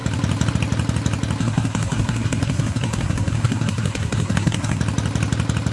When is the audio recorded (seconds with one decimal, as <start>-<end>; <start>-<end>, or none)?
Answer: 0.0-1.4; 4.8-5.7